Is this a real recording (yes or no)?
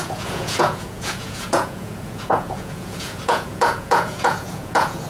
no